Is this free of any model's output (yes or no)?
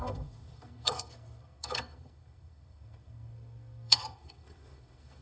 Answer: no